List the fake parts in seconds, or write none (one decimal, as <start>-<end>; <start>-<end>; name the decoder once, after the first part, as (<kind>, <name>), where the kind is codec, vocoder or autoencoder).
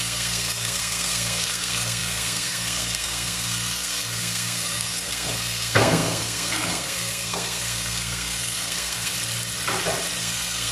0.0-9.1 (codec, SNAC); 10.2-10.7